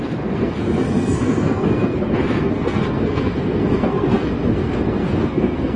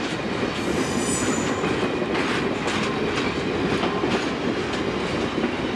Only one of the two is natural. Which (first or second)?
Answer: second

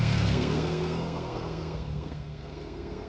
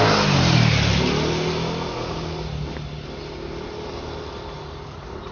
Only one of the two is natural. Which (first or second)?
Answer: second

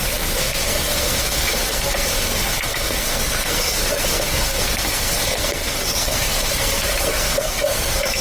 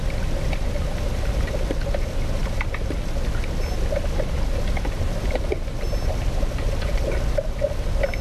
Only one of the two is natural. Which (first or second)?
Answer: second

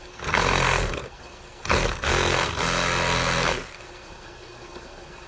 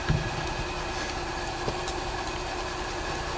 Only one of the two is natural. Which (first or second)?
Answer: second